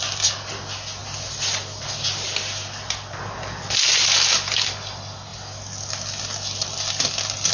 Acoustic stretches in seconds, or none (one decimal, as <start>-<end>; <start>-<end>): 0.0-7.5